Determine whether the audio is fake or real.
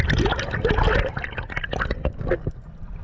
real